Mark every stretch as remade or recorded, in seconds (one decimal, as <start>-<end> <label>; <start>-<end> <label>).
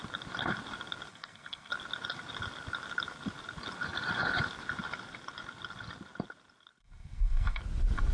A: 0.0-1.1 recorded; 1.1-1.7 remade; 1.7-6.8 recorded; 6.8-7.6 remade; 7.6-8.1 recorded